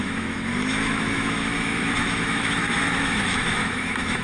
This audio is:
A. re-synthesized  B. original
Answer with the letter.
A